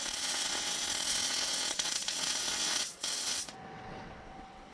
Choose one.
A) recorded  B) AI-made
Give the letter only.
B